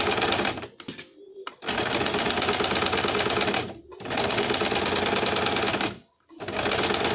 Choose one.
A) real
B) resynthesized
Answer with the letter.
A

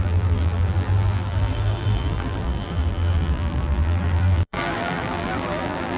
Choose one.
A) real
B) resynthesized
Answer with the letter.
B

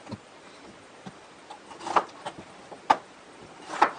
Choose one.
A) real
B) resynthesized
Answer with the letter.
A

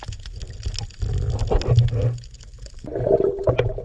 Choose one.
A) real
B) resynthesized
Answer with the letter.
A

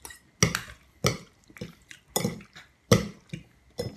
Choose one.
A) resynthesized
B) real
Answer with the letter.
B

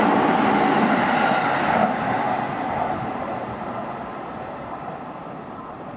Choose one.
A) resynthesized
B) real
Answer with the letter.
B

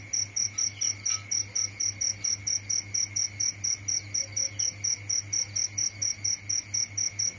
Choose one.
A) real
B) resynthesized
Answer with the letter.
A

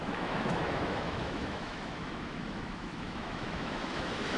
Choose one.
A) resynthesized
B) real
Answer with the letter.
A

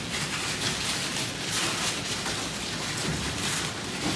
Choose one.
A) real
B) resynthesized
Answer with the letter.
A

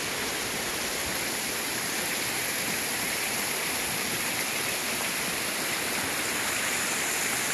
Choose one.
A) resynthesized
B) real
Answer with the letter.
B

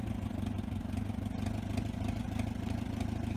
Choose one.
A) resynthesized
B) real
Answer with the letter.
B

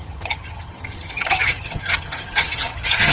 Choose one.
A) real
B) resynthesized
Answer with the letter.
B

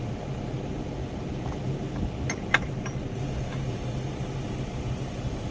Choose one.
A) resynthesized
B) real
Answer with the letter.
B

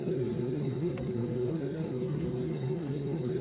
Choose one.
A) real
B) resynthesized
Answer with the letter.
B